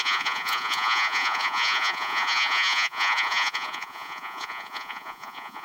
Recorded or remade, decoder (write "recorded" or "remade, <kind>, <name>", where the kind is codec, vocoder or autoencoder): remade, vocoder, Vocos